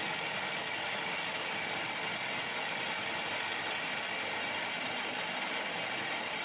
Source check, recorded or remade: recorded